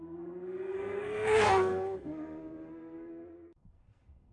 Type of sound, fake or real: fake